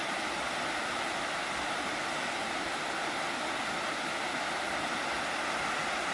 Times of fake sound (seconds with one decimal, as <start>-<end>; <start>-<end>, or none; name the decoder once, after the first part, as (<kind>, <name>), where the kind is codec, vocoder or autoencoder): none